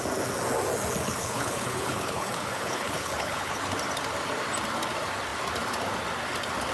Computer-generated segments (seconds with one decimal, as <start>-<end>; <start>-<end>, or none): 1.1-3.6